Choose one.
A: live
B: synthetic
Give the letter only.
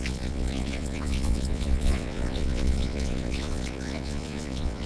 B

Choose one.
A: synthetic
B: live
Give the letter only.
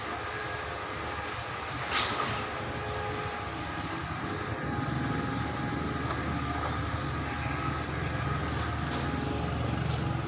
B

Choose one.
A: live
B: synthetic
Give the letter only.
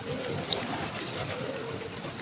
A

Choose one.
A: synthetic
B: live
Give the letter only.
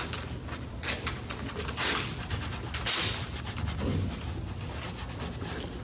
B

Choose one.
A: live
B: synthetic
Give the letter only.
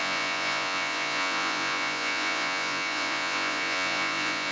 B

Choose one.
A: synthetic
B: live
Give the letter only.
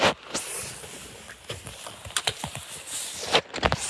B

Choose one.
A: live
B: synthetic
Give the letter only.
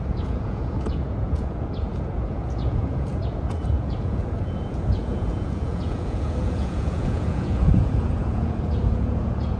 B